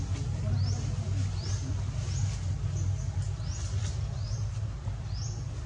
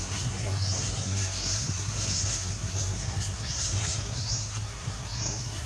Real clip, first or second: first